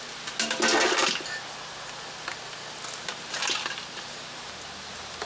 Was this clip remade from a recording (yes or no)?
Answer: no